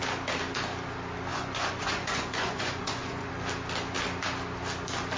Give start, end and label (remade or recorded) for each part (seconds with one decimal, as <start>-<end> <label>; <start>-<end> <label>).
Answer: 0.0-1.3 recorded; 1.3-3.3 remade; 3.3-5.2 recorded